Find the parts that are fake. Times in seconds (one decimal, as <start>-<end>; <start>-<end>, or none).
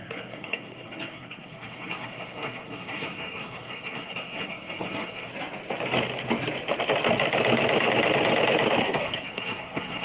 0.0-5.3; 8.8-10.0